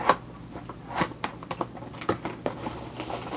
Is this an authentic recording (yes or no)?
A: no